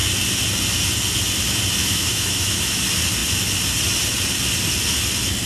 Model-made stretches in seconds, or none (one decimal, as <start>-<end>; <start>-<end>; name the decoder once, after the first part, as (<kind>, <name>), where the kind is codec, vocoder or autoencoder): 1.8-2.8 (autoencoder, DAC-VAE)